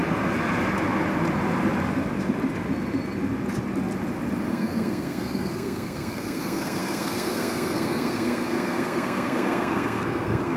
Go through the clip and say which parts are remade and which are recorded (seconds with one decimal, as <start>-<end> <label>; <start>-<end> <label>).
0.0-4.5 recorded; 4.5-10.6 remade